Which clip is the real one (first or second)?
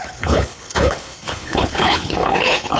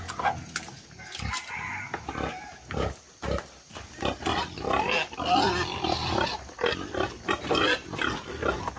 second